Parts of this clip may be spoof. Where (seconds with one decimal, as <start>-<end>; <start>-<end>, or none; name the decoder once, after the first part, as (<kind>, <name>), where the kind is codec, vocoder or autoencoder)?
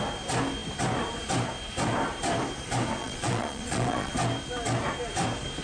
3.0-4.1 (vocoder, Vocos)